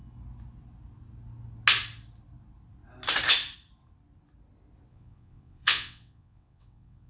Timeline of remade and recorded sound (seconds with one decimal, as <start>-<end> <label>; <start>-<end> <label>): 0.0-4.9 recorded; 4.9-7.1 remade